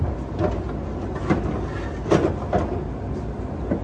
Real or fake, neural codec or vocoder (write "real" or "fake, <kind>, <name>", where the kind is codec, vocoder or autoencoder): real